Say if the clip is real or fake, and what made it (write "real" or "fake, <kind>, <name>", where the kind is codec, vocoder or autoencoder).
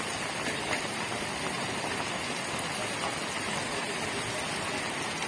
real